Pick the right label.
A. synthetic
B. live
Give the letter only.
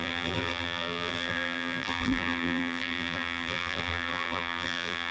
A